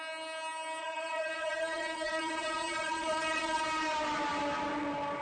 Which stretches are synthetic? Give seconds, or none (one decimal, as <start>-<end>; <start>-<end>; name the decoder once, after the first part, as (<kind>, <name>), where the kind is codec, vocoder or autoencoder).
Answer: 0.8-3.6 (vocoder, Vocos)